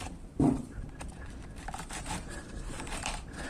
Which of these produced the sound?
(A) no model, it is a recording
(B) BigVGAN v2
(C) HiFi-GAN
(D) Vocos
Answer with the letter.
B